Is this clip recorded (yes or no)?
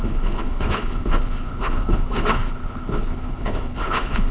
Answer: no